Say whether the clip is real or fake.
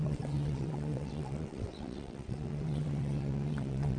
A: fake